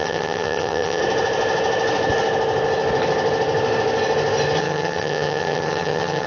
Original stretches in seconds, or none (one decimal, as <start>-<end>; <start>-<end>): 1.0-4.6